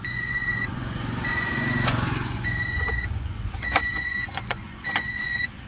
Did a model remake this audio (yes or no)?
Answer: yes